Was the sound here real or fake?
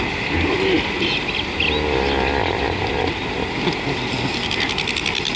real